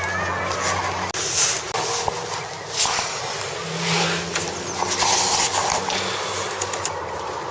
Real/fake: real